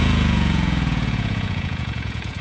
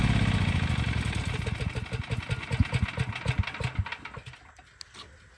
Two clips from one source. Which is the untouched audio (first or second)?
second